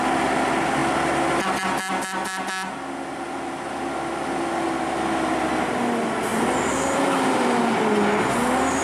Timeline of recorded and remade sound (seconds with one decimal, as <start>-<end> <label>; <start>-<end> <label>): 0.0-6.3 recorded; 6.3-7.6 remade; 7.6-8.8 recorded